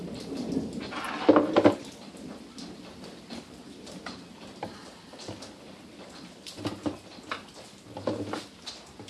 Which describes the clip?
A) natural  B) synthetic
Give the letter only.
A